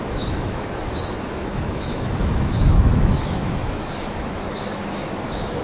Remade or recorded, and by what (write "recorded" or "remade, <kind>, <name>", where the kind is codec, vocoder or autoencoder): remade, autoencoder, DAC-VAE